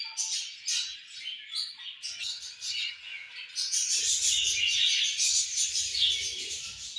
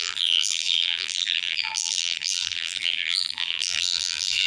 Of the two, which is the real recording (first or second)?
first